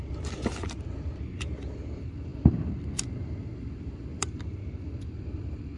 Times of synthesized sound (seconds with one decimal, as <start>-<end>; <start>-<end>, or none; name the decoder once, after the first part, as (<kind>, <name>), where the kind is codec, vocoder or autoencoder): none